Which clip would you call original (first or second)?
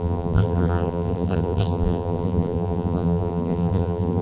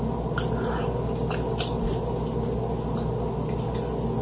second